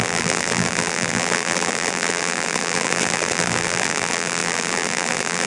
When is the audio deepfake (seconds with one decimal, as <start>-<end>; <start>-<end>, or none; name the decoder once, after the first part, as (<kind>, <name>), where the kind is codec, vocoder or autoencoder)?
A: 0.0-5.5 (vocoder, BigVGAN v2)